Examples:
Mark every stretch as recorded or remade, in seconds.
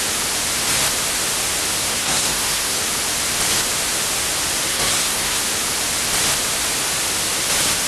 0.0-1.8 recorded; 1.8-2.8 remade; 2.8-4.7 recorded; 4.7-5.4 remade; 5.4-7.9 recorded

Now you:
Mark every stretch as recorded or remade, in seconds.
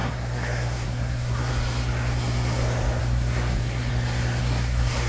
0.0-1.5 remade; 1.5-3.0 recorded; 3.0-3.9 remade; 3.9-4.4 recorded; 4.4-5.1 remade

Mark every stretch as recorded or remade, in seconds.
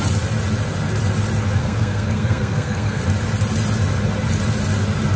0.0-1.6 recorded; 1.6-3.0 remade; 3.0-5.2 recorded